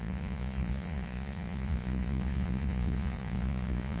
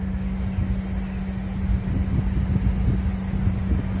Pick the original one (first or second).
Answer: second